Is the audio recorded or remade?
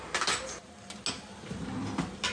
recorded